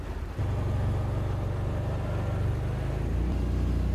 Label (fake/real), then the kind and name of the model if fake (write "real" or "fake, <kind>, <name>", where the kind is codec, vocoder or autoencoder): real